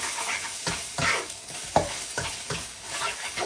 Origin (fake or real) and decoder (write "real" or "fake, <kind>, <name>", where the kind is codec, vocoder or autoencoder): fake, codec, DAC